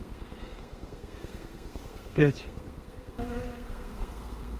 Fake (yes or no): yes